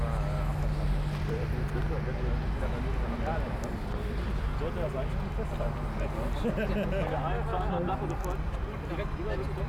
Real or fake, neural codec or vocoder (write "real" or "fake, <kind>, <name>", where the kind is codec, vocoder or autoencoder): real